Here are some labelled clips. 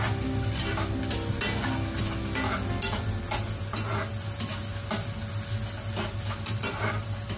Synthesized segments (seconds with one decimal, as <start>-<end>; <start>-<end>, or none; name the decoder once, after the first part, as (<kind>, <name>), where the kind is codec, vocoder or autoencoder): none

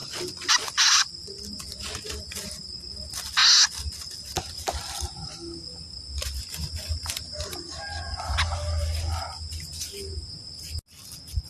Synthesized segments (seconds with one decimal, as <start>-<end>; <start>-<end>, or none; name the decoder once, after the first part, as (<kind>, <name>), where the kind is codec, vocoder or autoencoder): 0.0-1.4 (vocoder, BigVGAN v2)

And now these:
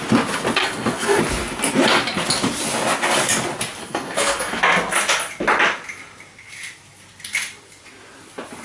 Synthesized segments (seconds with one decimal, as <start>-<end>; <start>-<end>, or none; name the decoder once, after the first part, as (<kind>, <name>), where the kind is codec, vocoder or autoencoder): 0.6-1.2 (codec, SNAC); 3.8-4.6

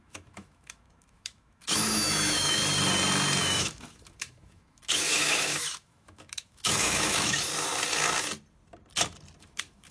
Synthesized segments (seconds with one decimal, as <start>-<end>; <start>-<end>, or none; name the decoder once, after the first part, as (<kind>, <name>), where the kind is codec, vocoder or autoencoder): 0.0-2.6 (autoencoder, DAC-VAE); 3.4-7.5; 9.4-9.9

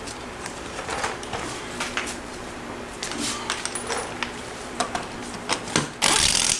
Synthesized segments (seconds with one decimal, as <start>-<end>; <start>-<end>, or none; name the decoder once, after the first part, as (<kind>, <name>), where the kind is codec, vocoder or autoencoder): 0.0-0.9 (vocoder, BigVGAN v2); 1.9-3.0; 4.4-5.2

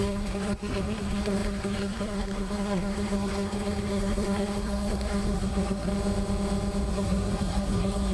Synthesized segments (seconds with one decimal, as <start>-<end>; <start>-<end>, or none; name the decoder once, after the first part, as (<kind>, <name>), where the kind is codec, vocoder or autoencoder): 0.0-5.9 (codec, SNAC); 6.9-8.1